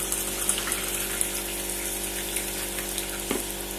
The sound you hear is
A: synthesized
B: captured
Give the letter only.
B